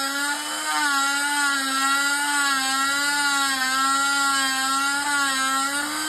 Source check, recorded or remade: recorded